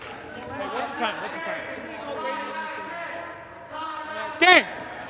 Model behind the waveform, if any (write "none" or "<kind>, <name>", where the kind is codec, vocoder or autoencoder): none